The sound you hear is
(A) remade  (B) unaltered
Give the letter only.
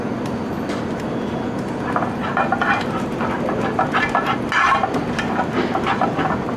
B